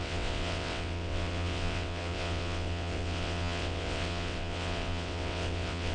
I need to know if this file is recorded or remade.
remade